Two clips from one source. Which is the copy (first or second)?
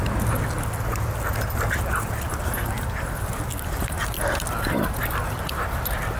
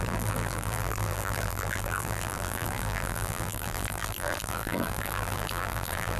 second